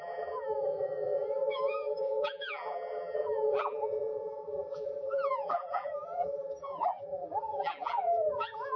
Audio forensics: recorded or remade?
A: remade